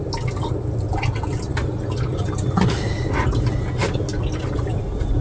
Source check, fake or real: real